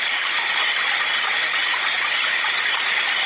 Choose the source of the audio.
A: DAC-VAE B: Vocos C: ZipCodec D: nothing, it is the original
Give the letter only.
D